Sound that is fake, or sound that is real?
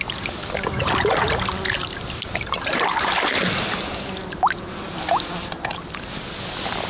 real